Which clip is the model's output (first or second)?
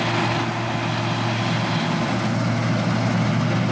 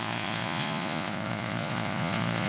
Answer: second